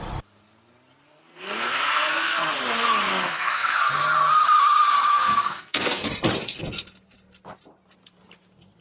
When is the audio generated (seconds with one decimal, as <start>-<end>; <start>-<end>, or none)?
1.1-2.5; 3.1-3.9; 5.1-6.1

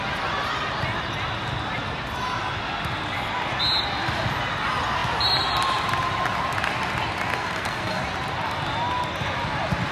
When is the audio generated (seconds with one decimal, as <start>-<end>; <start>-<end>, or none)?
7.3-8.0

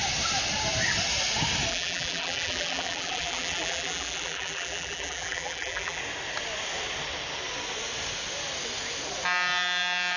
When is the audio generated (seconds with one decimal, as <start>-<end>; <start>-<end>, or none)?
1.7-6.0

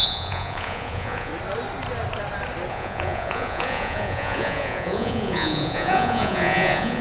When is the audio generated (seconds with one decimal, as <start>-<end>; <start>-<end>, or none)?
0.0-1.3; 2.7-7.0

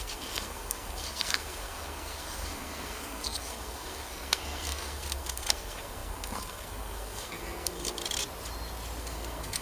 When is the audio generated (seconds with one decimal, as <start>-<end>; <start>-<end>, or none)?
0.0-8.0; 9.0-9.6

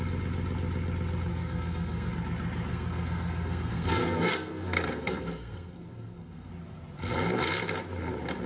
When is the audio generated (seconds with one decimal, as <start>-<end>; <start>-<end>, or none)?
1.3-2.1; 2.7-6.5

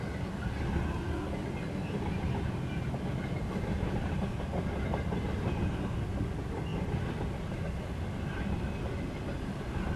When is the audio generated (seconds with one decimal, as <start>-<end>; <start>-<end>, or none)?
none

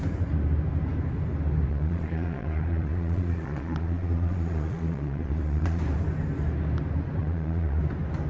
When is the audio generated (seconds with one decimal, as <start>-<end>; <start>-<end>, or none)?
1.7-5.8; 7.2-7.8